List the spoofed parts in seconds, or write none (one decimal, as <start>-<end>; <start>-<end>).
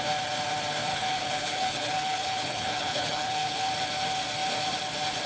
0.9-3.7